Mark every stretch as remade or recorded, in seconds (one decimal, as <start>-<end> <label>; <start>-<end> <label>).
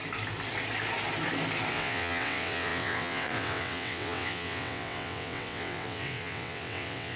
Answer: 0.0-1.7 recorded; 1.7-7.2 remade